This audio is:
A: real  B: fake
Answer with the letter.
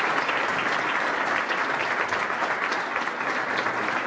A